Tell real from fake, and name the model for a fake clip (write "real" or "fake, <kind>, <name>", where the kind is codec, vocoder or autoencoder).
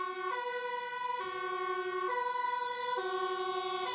real